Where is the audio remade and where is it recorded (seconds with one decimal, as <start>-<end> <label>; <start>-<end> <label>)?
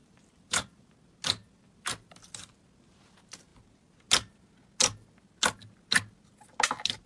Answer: 0.0-0.9 remade; 0.9-7.1 recorded